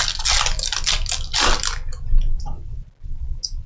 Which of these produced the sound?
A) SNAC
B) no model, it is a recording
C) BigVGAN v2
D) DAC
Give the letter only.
B